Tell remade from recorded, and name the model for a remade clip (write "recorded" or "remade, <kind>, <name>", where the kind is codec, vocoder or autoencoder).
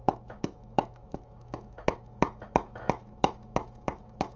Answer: remade, autoencoder, DAC-VAE